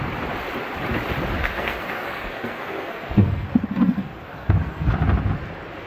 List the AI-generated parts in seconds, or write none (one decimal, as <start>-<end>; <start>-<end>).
1.4-4.9